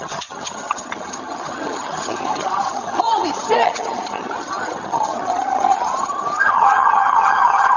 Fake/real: fake